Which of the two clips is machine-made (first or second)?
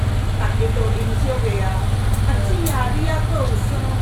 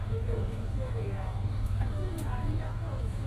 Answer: second